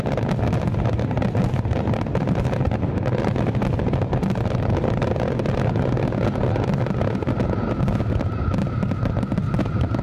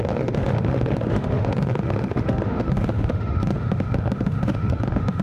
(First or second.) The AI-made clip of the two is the second